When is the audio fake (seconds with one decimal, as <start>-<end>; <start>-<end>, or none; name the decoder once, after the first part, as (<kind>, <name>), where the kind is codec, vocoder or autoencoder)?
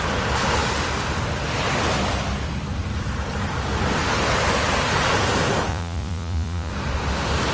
5.7-6.7 (vocoder, Vocos)